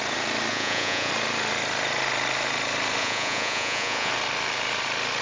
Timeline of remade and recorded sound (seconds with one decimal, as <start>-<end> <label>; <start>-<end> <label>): 0.0-0.5 recorded; 0.5-1.1 remade; 1.1-3.0 recorded; 3.0-4.1 remade; 4.1-5.2 recorded